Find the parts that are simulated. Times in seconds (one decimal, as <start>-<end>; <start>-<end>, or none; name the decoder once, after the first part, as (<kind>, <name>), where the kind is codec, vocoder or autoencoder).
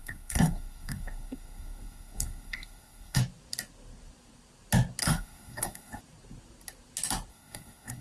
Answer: 0.0-3.2 (codec, SNAC); 5.0-6.0; 7.3-8.0